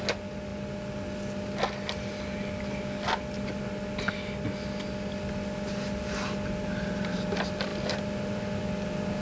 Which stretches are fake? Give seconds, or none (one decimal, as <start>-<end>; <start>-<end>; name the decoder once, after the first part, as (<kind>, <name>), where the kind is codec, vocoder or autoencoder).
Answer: none